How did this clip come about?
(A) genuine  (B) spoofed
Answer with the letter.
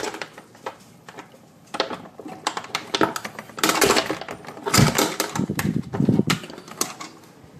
A